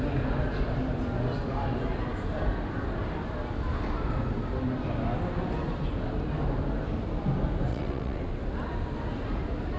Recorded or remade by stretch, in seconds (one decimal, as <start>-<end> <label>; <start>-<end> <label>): 0.0-7.7 recorded; 7.7-8.4 remade; 8.4-9.8 recorded